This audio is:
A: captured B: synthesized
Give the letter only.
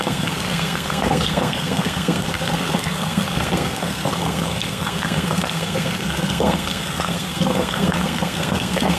B